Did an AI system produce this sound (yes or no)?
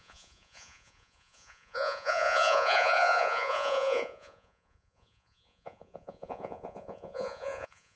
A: yes